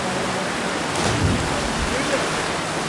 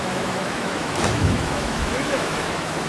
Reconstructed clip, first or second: second